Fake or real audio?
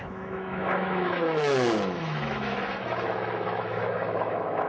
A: fake